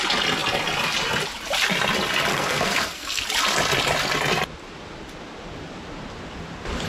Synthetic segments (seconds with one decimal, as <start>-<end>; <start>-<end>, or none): 2.3-3.2